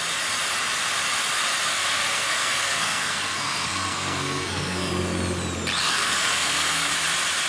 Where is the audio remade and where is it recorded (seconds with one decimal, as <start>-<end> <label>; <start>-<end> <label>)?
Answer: 0.0-1.7 recorded; 1.7-4.9 remade; 4.9-5.8 recorded; 5.8-6.9 remade; 6.9-7.5 recorded